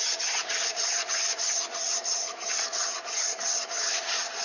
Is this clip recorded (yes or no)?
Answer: no